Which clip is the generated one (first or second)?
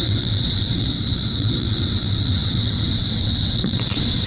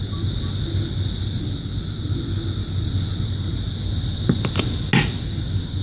first